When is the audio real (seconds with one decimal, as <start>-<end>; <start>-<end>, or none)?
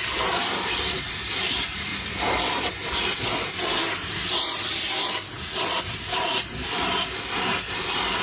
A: 1.9-5.7; 6.6-7.7